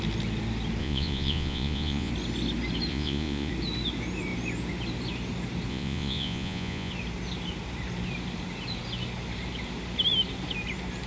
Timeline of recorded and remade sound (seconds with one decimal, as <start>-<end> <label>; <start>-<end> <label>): 0.0-0.8 recorded; 0.8-2.1 remade; 2.1-2.9 recorded; 2.9-3.5 remade; 3.5-5.7 recorded; 5.7-6.9 remade; 6.9-11.1 recorded